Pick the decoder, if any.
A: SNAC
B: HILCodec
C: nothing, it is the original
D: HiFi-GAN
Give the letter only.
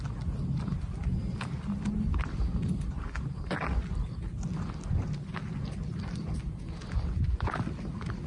C